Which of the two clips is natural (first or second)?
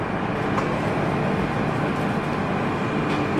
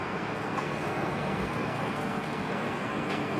first